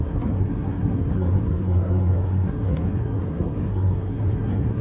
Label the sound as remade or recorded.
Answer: remade